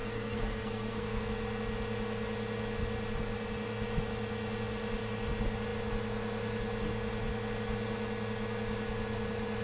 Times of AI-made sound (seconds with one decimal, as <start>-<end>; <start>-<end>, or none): 0.0-1.2